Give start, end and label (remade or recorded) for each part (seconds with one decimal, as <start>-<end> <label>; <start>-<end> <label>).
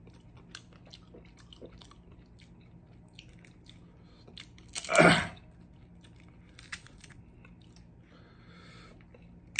0.0-6.7 recorded; 6.7-7.2 remade; 7.2-9.6 recorded